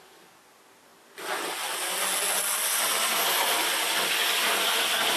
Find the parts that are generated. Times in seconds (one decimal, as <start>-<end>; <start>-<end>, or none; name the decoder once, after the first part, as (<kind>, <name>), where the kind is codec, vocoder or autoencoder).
none